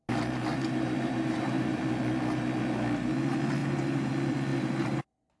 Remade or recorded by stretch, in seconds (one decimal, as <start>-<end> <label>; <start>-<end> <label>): 0.0-0.5 recorded; 0.5-1.8 remade; 1.8-3.6 recorded; 3.6-4.1 remade; 4.1-4.5 recorded; 4.5-5.0 remade; 5.0-5.4 recorded